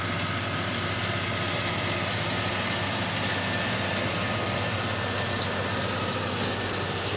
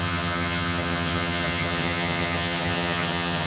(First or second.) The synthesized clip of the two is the second